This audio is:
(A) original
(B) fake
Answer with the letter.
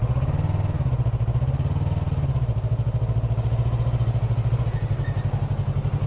A